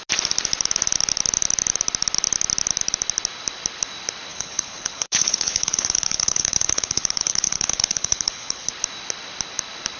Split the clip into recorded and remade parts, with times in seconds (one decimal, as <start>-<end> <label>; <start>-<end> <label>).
0.0-4.3 recorded; 4.3-8.7 remade; 8.7-10.0 recorded